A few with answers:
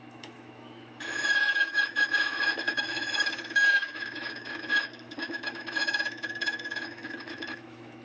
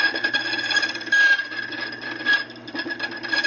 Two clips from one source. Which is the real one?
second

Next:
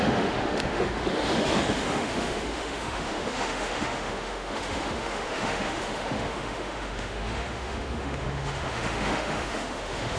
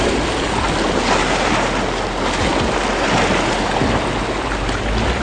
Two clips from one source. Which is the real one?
second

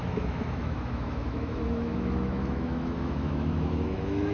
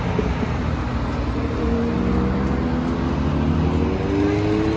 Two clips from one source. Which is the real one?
second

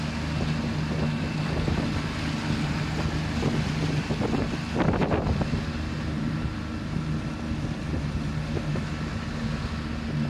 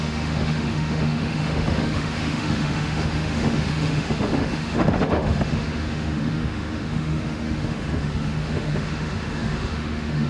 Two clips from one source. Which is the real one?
first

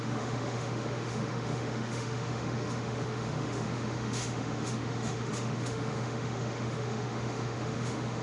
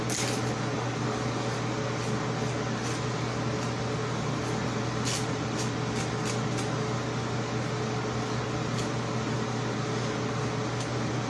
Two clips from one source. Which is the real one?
second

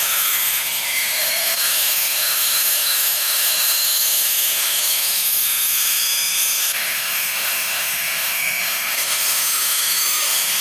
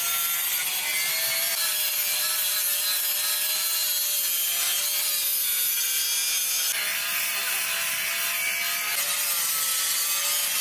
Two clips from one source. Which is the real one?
second